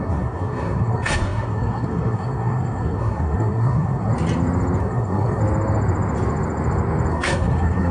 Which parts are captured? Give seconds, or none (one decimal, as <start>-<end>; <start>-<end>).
4.1-4.8; 5.4-7.1